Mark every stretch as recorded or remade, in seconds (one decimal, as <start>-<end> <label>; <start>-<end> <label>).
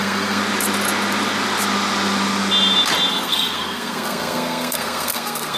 0.0-0.4 remade; 0.4-3.1 recorded; 3.1-5.6 remade